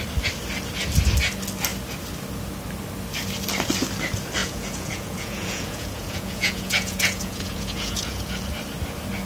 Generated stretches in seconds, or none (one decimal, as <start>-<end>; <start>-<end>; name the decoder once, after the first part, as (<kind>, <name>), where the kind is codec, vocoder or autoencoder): 4.4-8.4 (vocoder, Vocos)